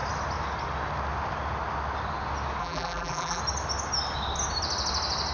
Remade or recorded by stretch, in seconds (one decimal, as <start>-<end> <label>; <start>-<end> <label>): 0.0-2.6 recorded; 2.6-3.4 remade; 3.4-5.3 recorded